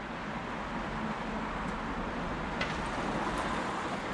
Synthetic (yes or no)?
no